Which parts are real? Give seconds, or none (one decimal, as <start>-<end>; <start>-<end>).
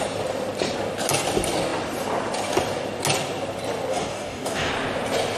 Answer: 0.0-3.9; 4.7-5.4